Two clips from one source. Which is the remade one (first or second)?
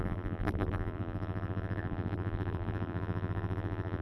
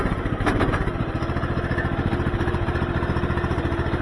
first